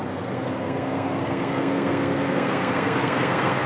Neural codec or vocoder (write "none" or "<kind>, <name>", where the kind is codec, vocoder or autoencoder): codec, SNAC